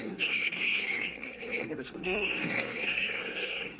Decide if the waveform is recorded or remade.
remade